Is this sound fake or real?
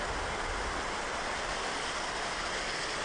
real